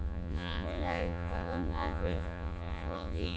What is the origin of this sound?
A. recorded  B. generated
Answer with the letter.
B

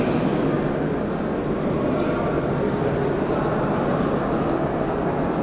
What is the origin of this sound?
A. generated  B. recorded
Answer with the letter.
B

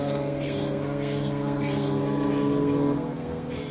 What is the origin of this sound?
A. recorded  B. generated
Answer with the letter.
B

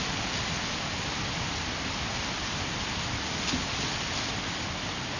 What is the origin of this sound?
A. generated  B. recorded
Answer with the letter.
B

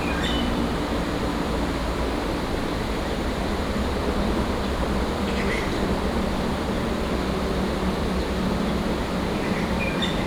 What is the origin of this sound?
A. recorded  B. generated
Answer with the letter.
B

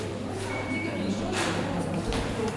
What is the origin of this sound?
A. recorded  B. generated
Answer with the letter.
B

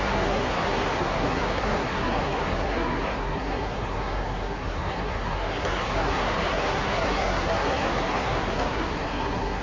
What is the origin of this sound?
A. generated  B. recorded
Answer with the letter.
A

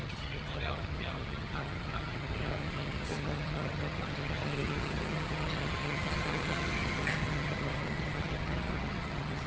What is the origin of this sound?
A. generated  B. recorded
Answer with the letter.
A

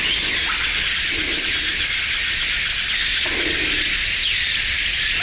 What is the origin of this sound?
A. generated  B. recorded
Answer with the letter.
B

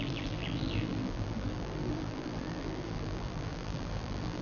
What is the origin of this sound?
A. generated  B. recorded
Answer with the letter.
A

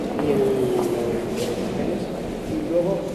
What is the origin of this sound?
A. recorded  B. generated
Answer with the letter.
A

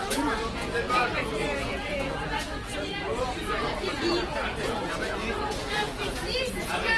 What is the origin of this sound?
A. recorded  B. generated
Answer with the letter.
B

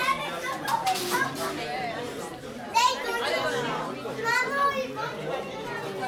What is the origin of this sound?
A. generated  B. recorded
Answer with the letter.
B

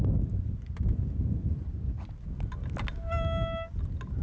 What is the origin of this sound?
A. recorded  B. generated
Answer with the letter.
A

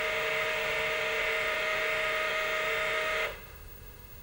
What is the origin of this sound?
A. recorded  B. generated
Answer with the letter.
B